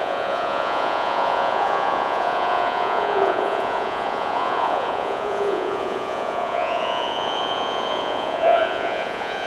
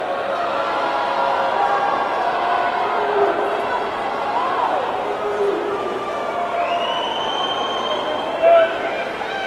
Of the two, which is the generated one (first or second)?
first